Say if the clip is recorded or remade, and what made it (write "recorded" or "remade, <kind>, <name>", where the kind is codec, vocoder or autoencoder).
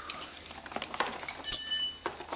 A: recorded